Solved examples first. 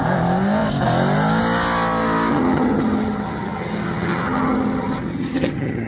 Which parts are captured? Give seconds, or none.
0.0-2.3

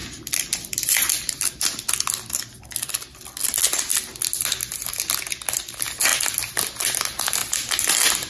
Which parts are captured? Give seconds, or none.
0.0-8.3

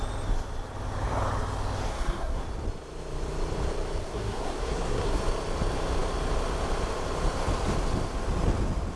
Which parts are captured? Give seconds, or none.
0.0-1.9; 2.4-4.0; 5.2-9.0

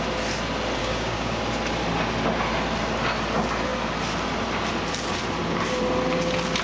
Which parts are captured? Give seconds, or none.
0.0-0.8; 1.4-6.6

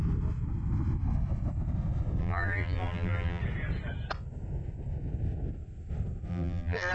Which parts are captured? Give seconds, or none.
0.0-2.2; 3.4-6.3

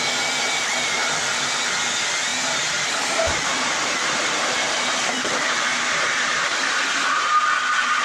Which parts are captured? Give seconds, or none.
0.0-2.3; 4.5-5.7; 7.4-8.0

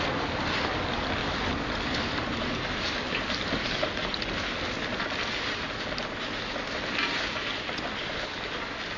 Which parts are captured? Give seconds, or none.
0.0-9.0